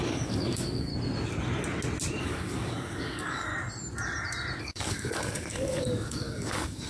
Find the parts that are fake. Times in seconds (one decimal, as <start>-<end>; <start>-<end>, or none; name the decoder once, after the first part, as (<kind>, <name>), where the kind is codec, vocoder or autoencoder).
0.0-0.9 (codec, DAC); 2.2-3.5; 4.6-6.9